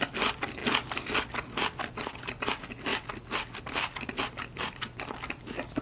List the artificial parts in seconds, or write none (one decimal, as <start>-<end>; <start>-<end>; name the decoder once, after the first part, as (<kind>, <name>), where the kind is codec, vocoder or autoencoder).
none